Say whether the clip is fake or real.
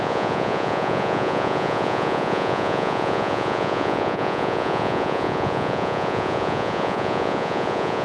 fake